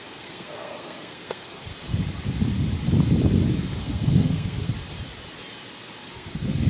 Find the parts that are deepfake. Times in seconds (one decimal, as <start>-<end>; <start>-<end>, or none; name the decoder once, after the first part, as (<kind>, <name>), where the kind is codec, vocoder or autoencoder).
0.0-1.7 (codec, SNAC); 3.8-4.7; 6.1-6.7